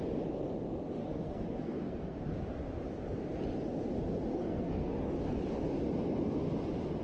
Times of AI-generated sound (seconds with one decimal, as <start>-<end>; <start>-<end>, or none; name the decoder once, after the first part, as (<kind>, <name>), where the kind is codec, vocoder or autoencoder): 1.0-2.2 (codec, SNAC); 4.3-4.9